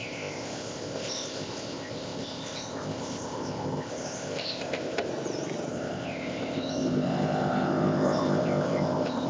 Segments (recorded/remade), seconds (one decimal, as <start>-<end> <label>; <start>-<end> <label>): 0.0-5.1 remade; 5.1-5.7 recorded; 5.7-9.3 remade